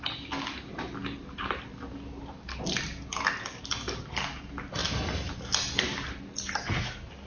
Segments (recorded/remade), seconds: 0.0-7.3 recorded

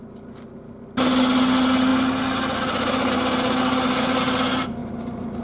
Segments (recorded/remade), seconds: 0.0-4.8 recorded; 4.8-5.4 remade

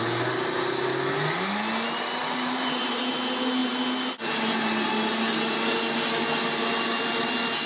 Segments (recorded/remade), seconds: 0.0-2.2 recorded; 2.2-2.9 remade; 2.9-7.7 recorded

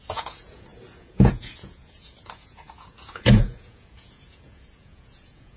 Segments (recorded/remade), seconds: 0.0-5.6 remade

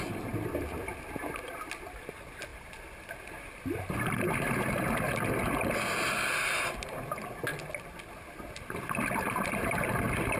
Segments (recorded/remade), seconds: 0.0-10.4 recorded

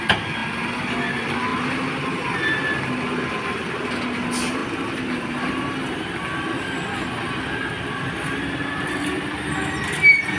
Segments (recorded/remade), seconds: 0.0-10.4 recorded